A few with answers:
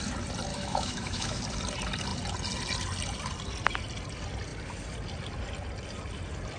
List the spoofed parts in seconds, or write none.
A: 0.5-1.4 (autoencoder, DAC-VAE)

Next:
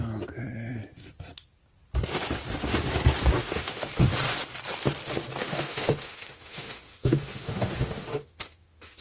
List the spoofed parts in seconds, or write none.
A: 3.4-3.9 (autoencoder, DAC-VAE); 5.4-9.0

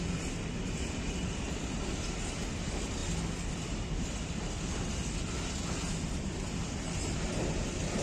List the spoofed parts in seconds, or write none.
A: none

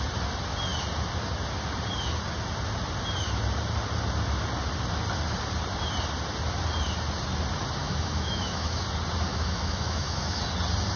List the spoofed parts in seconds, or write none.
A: 7.8-8.8 (autoencoder, DAC-VAE); 9.3-10.4

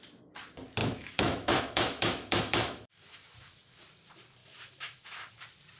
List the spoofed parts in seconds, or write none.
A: 0.8-3.8 (autoencoder, DAC-VAE); 4.4-5.3

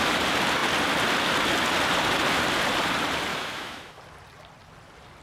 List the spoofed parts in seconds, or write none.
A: 3.3-4.0 (autoencoder, DAC-VAE)